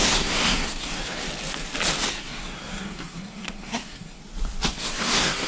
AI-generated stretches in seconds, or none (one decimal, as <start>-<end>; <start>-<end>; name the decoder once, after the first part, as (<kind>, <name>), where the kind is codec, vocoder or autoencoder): 0.0-1.2 (codec, SNAC); 2.1-4.2; 4.7-5.5